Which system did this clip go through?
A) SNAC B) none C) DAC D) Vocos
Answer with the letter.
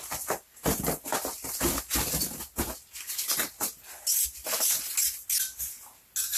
B